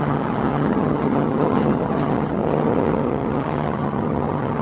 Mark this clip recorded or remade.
remade